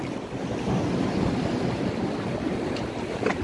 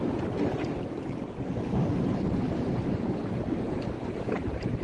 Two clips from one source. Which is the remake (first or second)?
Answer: second